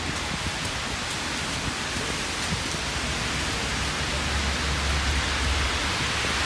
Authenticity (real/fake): real